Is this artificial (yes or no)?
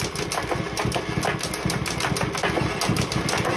no